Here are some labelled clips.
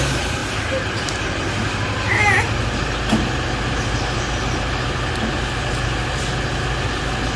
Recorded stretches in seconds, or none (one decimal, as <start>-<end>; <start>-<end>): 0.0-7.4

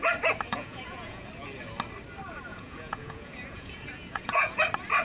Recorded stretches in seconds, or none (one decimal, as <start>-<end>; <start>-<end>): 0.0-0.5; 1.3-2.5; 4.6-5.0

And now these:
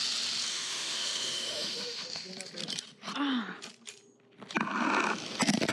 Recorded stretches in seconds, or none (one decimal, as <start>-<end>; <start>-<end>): 0.0-0.5; 2.3-5.7

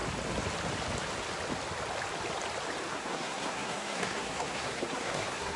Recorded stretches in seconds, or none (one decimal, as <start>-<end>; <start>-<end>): 0.0-2.9

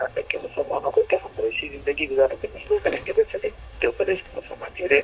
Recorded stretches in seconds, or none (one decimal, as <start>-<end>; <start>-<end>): 1.4-2.3

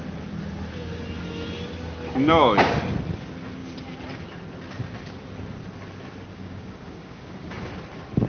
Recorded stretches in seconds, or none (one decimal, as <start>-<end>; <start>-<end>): 0.0-6.3; 7.7-8.3